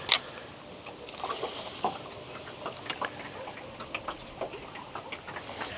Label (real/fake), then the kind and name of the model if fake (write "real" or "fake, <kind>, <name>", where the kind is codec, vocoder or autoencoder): real